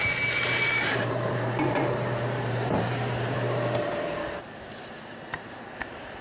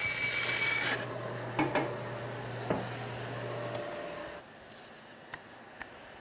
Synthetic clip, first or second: first